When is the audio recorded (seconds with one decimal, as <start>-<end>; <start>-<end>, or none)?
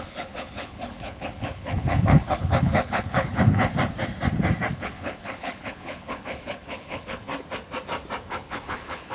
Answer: 3.7-4.7; 7.3-8.3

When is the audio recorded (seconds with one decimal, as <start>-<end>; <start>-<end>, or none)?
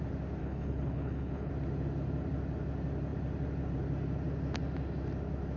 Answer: 0.0-0.4; 1.5-5.6